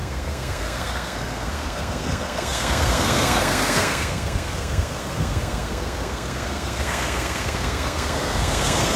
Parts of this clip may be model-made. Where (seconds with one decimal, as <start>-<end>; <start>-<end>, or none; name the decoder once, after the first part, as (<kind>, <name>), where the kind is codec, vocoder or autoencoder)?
0.0-9.0 (codec, SNAC)